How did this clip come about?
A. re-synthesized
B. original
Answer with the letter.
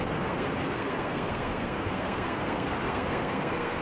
A